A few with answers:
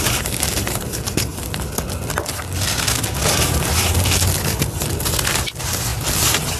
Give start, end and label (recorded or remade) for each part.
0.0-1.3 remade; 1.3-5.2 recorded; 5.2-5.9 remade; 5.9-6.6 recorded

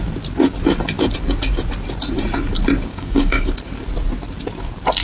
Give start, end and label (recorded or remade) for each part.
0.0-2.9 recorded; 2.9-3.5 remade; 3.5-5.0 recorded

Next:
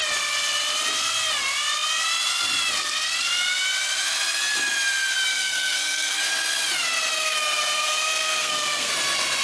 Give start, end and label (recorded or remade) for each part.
0.0-5.3 recorded; 5.3-6.2 remade; 6.2-7.2 recorded; 7.2-8.9 remade; 8.9-9.4 recorded

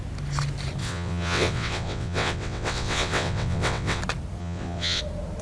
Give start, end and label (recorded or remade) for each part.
0.0-0.8 recorded; 0.8-4.0 remade; 4.0-4.4 recorded; 4.4-5.0 remade; 5.0-5.4 recorded

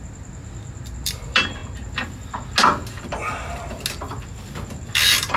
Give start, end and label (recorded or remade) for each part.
0.0-1.6 remade; 1.6-4.8 recorded; 4.8-5.4 remade

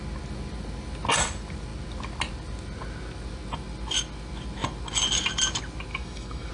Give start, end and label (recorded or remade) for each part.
0.0-5.9 recorded; 5.9-6.5 remade

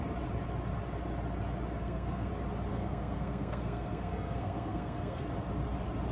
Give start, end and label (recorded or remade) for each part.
0.0-1.8 recorded; 1.8-2.3 remade; 2.3-2.7 recorded; 2.7-5.2 remade; 5.2-6.1 recorded